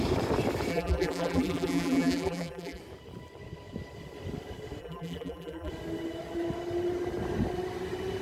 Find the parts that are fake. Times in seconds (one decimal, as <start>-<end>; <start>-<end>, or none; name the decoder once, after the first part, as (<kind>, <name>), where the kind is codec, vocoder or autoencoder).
0.7-2.8 (vocoder, BigVGAN v2); 4.8-5.7

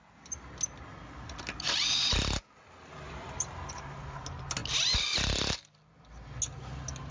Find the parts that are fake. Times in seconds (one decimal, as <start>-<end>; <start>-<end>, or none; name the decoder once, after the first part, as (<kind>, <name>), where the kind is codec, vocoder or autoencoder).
none

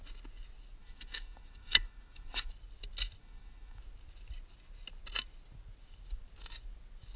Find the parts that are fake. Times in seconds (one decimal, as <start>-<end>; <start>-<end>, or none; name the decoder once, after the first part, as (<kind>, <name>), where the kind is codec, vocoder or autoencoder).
0.8-2.5 (autoencoder, DAC-VAE); 3.2-3.8

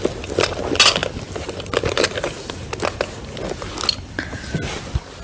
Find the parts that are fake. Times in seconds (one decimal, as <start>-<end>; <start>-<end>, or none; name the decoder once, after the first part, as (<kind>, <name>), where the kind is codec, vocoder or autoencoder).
none

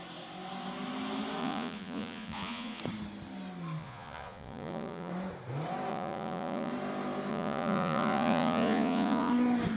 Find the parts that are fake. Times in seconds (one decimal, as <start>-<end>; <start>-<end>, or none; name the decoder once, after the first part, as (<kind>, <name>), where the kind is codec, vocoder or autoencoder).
1.4-2.8 (vocoder, Vocos); 3.8-5.1; 5.9-6.7; 7.3-9.3

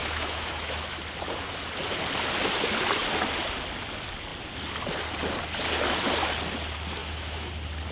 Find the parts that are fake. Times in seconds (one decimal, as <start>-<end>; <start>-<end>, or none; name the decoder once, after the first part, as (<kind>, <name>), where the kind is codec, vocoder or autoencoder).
0.0-1.0 (autoencoder, DAC-VAE); 7.0-7.5